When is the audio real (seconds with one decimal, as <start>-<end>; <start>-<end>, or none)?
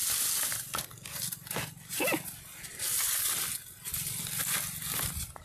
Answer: 0.0-5.4